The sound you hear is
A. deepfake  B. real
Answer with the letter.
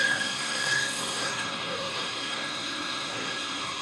A